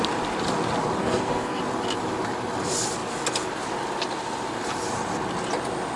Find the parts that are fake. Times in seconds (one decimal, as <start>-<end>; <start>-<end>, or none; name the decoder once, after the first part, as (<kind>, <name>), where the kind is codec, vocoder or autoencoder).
1.0-1.6 (codec, SNAC)